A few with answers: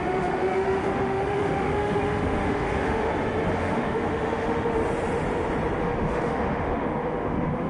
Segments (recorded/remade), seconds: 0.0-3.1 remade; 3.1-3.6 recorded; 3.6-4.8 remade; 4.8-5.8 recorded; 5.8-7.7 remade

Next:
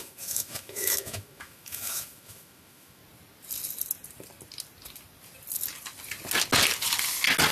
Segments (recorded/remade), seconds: 0.0-3.0 remade; 3.0-7.5 recorded

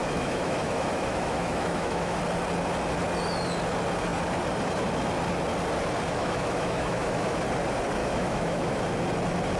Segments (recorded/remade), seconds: 0.0-2.2 remade; 2.2-6.1 recorded; 6.1-7.4 remade; 7.4-8.0 recorded; 8.0-8.8 remade; 8.8-9.6 recorded

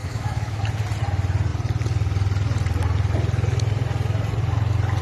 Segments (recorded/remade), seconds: 0.0-0.6 remade; 0.6-5.0 recorded

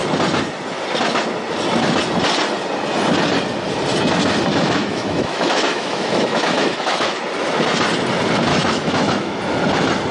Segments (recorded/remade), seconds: 0.0-4.5 recorded; 4.5-7.2 remade; 7.2-8.5 recorded; 8.5-9.4 remade; 9.4-10.1 recorded

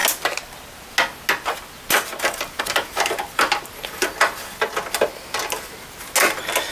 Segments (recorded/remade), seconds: 0.0-6.7 recorded